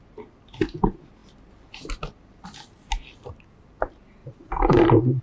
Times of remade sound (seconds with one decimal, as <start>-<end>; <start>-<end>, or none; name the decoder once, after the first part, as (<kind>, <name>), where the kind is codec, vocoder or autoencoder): 4.2-5.2 (vocoder, BigVGAN v2)